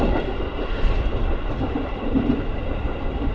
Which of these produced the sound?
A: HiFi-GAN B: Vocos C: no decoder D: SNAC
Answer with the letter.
C